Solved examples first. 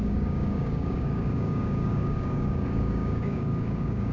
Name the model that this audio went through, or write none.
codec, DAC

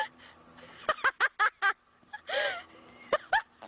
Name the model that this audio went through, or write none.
none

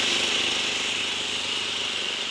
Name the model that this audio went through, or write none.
none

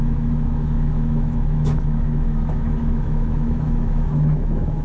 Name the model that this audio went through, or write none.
autoencoder, DAC-VAE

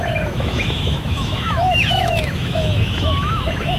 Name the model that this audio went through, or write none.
autoencoder, DAC-VAE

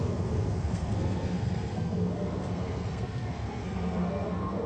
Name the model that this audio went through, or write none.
codec, SNAC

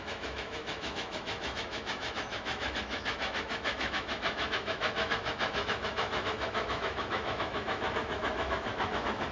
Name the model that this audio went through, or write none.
autoencoder, DAC-VAE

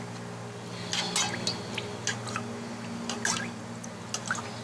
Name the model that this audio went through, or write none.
none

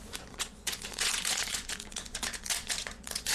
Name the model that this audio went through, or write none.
vocoder, Vocos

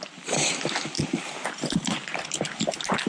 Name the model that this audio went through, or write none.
none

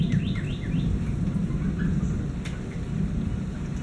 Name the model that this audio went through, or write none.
none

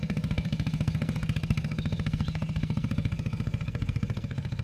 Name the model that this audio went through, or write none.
codec, SNAC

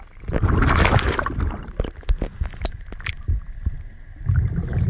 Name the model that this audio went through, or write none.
none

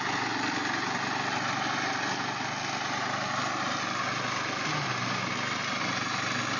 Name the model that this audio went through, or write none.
none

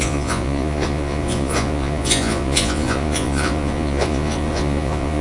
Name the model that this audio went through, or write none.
vocoder, Vocos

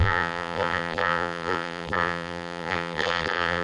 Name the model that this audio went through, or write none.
vocoder, BigVGAN v2